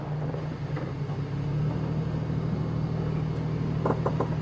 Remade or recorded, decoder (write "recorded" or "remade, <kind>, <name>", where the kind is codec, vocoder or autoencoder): recorded